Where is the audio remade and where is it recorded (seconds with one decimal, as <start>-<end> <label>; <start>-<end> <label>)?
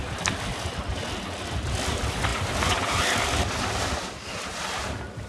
0.0-5.3 recorded